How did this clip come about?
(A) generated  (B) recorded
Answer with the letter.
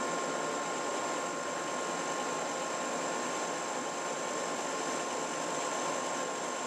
B